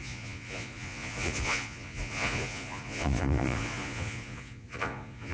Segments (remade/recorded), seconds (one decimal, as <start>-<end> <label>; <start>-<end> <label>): 0.0-5.3 remade